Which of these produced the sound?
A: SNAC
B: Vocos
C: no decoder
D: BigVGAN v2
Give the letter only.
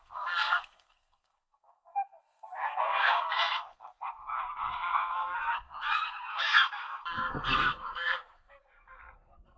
A